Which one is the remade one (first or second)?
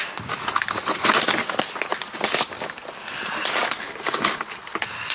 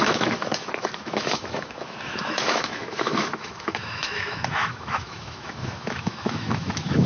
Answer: second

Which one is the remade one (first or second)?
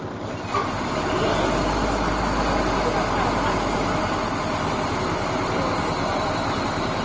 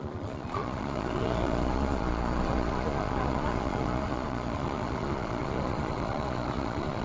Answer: second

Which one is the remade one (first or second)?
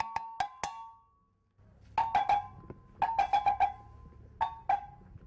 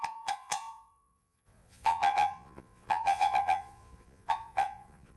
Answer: second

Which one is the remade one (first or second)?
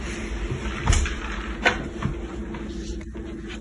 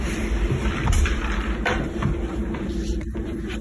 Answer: second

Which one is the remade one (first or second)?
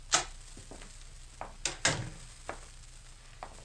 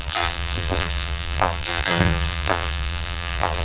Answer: second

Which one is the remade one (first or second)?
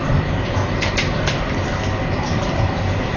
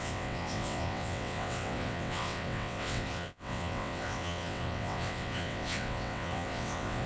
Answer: second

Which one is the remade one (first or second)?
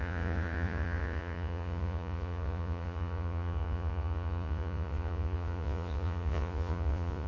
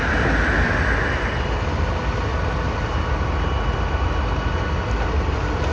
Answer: first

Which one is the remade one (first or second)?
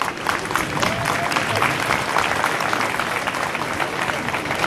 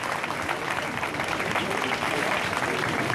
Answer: second